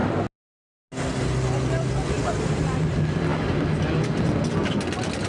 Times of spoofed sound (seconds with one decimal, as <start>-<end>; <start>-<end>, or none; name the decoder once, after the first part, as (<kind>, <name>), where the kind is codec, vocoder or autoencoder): none